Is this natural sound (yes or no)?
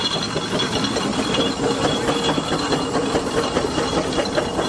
yes